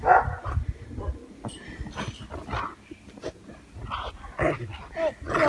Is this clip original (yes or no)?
yes